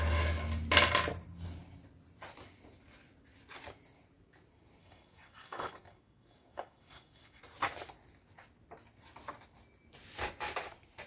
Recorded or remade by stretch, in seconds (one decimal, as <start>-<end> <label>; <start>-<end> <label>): 0.0-4.8 recorded; 4.8-7.4 remade; 7.4-11.1 recorded